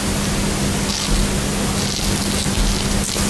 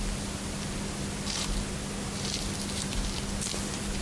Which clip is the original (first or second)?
first